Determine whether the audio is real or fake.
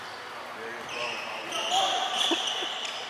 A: real